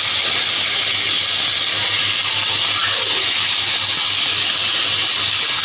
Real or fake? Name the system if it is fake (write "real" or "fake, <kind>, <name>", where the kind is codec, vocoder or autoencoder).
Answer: real